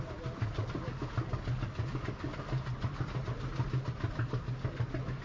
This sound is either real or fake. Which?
real